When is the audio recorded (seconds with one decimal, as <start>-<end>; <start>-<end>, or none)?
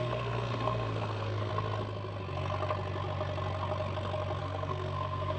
1.5-4.4